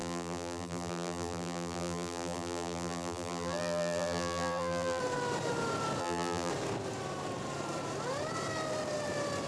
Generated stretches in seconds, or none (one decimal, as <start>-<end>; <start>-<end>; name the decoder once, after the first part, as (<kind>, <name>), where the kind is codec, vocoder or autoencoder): 0.0-5.0 (vocoder, BigVGAN v2); 6.0-6.5